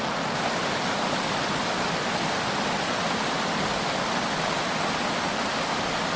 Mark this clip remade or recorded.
recorded